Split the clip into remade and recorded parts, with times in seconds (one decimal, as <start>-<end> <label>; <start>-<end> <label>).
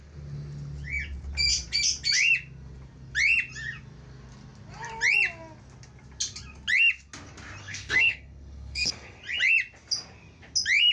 0.0-7.6 recorded; 7.6-9.2 remade; 9.2-10.9 recorded